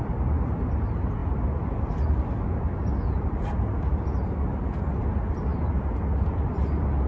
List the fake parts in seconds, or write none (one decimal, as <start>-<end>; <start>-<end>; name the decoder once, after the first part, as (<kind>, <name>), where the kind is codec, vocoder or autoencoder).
none